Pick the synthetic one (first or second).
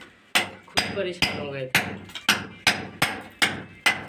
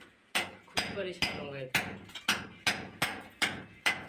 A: second